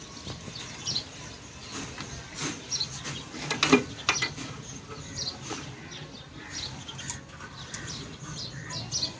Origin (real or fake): real